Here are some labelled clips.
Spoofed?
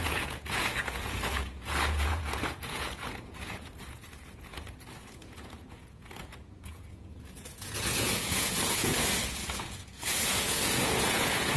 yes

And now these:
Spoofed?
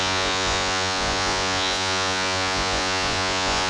yes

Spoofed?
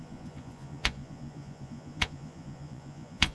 yes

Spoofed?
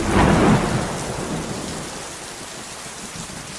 no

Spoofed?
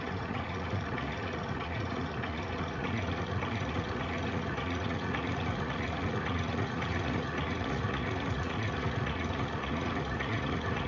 yes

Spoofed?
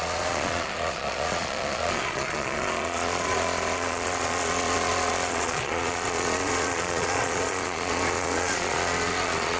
yes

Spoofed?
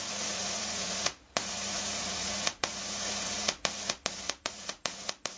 yes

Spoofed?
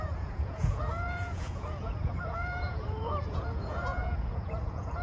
yes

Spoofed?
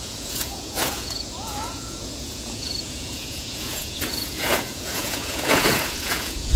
yes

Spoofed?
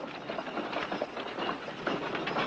no